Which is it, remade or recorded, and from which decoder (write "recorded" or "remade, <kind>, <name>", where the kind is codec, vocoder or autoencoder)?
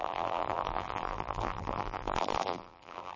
remade, vocoder, BigVGAN v2